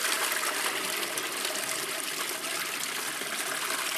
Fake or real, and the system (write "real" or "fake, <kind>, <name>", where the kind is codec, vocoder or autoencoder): real